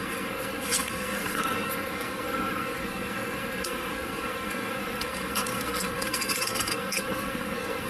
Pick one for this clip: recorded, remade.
remade